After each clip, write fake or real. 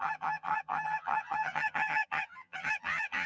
fake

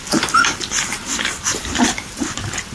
real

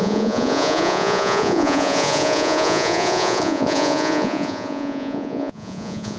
fake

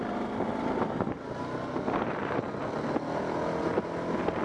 real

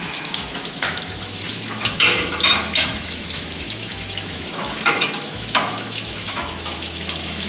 fake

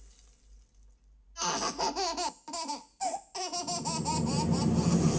real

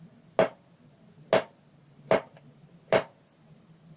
real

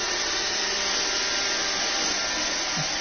real